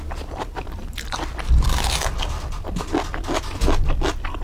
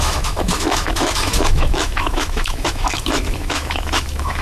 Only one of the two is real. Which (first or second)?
first